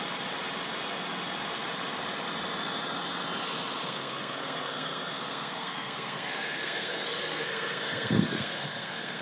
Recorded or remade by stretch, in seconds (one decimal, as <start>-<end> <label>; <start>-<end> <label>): 0.0-3.8 recorded; 3.8-9.2 remade